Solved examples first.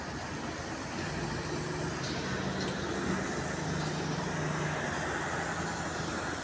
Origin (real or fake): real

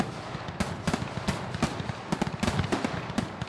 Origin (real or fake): real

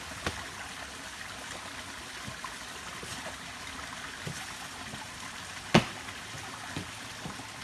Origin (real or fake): real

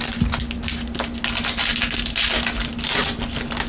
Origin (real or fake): real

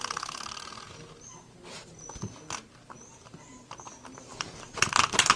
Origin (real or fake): real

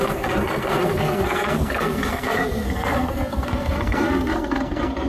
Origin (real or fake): fake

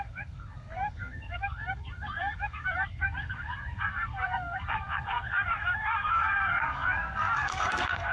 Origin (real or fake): fake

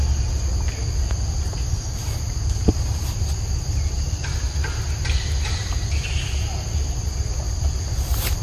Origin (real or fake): real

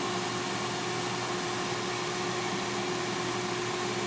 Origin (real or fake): real